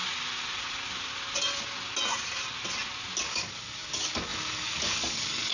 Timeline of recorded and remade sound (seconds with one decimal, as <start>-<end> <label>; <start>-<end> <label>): 0.0-3.3 recorded; 3.3-5.5 remade